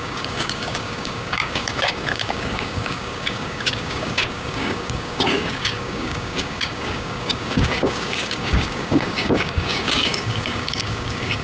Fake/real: fake